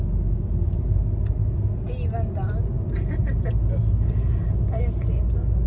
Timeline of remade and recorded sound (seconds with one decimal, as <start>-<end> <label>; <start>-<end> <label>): 0.0-5.7 recorded